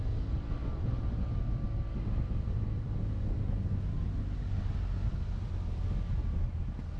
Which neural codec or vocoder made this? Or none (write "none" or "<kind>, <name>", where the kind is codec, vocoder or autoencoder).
none